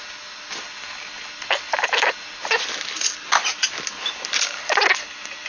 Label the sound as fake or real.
real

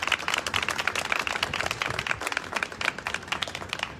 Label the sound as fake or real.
real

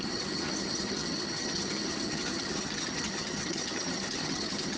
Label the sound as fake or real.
fake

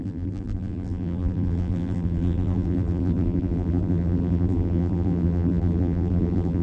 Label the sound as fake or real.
fake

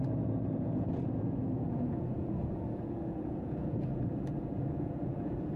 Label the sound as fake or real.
fake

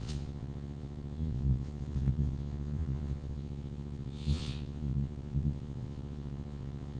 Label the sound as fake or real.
fake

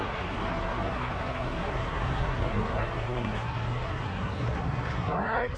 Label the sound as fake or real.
fake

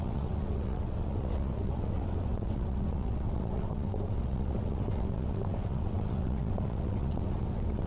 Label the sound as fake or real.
fake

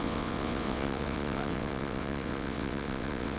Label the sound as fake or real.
fake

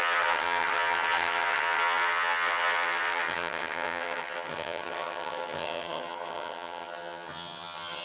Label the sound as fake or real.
fake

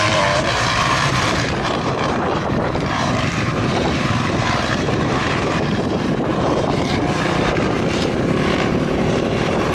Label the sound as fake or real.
fake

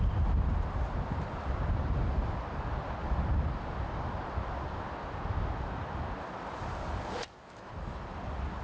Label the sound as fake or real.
real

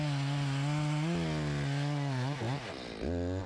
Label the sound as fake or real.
real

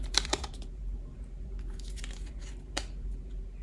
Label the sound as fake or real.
fake